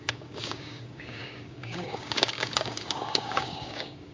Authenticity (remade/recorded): remade